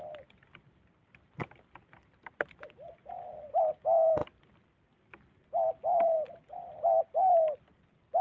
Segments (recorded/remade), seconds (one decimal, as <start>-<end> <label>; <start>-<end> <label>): 0.0-8.2 recorded